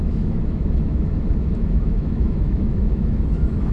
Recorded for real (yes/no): no